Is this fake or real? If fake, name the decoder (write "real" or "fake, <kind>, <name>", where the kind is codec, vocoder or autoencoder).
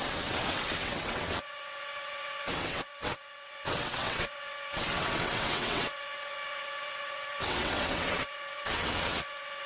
fake, vocoder, WaveNeXt